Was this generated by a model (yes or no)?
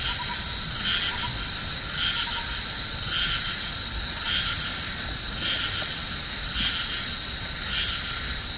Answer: no